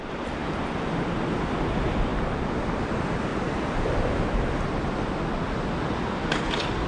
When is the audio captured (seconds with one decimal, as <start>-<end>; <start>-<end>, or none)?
0.0-6.9